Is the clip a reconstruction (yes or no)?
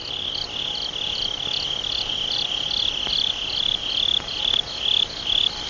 no